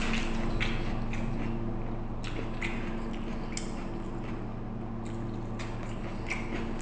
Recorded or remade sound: recorded